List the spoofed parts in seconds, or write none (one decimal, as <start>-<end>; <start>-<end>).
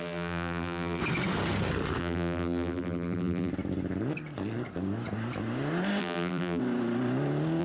0.0-1.0; 2.0-3.5; 6.0-6.6